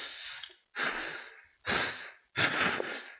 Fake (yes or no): no